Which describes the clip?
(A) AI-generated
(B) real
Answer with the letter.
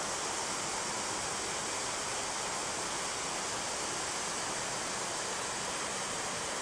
B